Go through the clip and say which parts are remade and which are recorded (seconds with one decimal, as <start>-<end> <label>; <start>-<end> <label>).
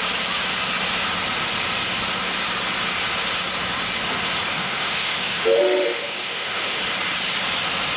0.0-4.5 recorded; 4.5-6.8 remade; 6.8-8.0 recorded